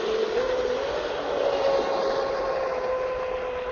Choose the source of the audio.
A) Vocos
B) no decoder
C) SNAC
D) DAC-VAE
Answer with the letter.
B